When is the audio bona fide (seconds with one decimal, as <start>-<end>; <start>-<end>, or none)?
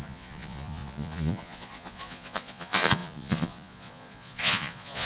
none